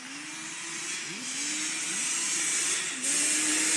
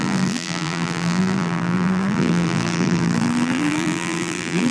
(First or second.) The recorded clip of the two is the first